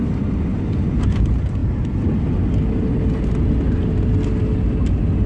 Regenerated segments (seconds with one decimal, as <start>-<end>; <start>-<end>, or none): none